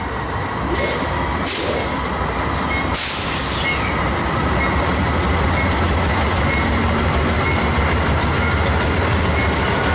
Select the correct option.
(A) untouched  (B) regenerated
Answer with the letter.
A